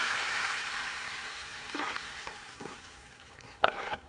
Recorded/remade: remade